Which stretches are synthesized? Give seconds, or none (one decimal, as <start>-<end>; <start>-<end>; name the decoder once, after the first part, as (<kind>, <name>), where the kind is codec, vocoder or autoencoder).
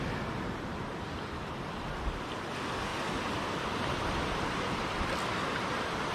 0.7-1.8 (vocoder, BigVGAN v2); 2.9-6.1